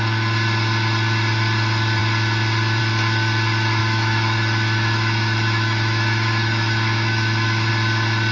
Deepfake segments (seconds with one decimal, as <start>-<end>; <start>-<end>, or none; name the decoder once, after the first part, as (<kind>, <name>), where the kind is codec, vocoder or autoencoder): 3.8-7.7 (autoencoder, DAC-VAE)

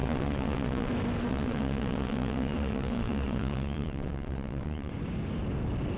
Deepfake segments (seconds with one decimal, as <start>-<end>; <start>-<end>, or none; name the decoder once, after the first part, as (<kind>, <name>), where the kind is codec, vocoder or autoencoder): 0.0-0.9 (vocoder, WaveNeXt); 1.3-4.9

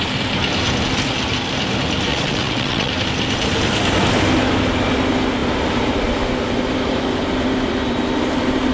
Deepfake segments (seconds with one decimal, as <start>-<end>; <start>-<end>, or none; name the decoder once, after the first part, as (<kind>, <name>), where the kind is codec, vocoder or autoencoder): 2.1-2.9 (vocoder, WaveNeXt)